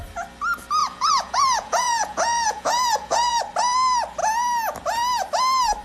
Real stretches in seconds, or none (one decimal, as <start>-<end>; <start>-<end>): 0.0-0.8; 3.4-5.8